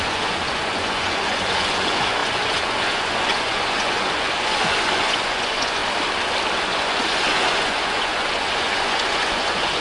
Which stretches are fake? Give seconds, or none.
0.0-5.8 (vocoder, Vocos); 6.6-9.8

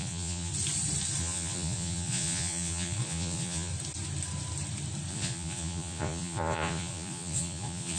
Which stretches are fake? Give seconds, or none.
0.0-0.5 (vocoder, Vocos); 1.2-3.7; 5.1-8.0

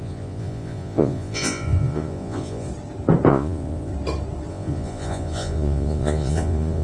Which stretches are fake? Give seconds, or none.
0.0-2.7 (vocoder, Vocos); 3.3-3.9; 4.5-6.8